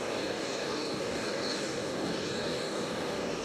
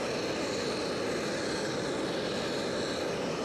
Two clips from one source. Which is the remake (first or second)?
first